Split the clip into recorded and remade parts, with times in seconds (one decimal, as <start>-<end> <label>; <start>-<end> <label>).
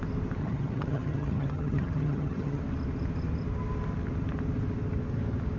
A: 0.0-0.4 recorded; 0.4-2.6 remade; 2.6-5.6 recorded